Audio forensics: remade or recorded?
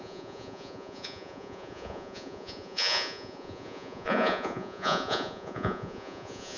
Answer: remade